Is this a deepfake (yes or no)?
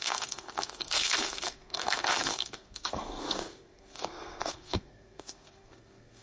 yes